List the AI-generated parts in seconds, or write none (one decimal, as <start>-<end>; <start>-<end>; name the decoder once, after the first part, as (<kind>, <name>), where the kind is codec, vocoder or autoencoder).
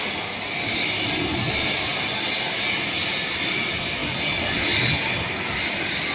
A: none